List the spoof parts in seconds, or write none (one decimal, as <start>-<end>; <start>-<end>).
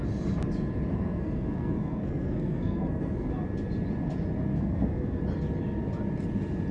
0.9-3.3; 4.5-5.2